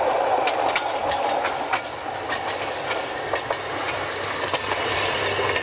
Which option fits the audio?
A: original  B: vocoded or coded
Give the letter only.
A